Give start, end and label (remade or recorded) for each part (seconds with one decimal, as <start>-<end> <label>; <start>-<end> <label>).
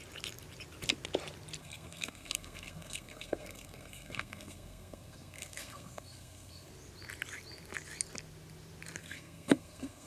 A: 0.0-1.6 recorded; 1.6-6.7 remade; 6.7-9.0 recorded; 9.0-10.1 remade